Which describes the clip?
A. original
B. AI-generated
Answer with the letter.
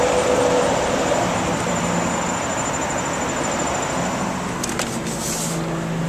A